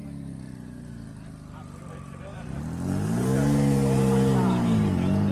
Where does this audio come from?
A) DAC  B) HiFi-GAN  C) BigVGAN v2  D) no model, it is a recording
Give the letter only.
D